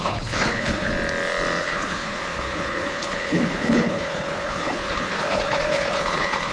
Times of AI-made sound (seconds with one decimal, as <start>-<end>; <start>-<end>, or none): 0.0-0.9; 1.6-6.5